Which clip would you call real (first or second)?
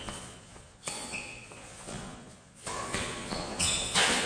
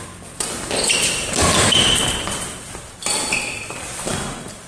second